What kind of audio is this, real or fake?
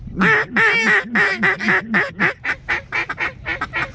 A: real